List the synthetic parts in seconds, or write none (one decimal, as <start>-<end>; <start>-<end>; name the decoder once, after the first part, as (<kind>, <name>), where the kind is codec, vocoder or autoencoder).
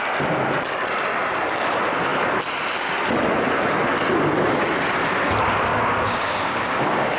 5.7-7.2 (codec, DAC)